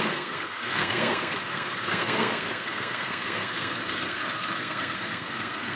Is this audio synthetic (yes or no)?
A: yes